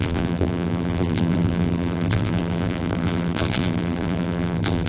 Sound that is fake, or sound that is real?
fake